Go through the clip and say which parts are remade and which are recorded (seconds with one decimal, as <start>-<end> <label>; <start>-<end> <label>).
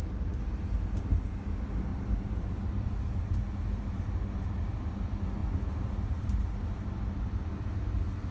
0.0-1.9 recorded; 1.9-2.5 remade; 2.5-8.3 recorded